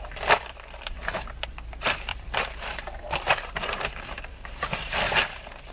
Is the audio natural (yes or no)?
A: no